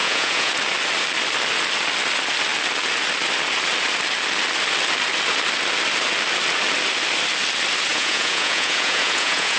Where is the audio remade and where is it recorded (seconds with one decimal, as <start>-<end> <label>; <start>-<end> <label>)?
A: 0.0-0.5 remade; 0.5-7.9 recorded; 7.9-9.6 remade